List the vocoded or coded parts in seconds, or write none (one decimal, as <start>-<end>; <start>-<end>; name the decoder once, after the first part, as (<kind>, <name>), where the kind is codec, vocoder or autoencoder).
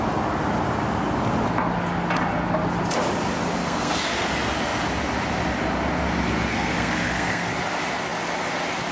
3.6-4.3 (codec, SNAC); 6.5-7.5